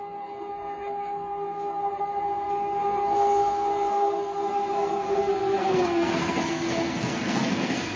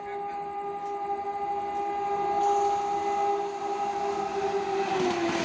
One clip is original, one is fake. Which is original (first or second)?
second